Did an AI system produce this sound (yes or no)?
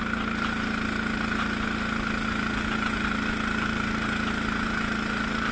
no